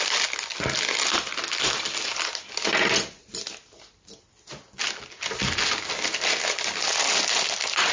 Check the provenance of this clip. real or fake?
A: real